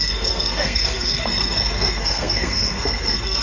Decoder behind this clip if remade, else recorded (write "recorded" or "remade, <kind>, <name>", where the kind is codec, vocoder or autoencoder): remade, codec, SNAC